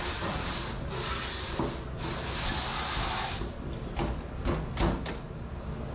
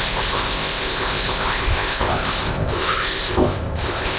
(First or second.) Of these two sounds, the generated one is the second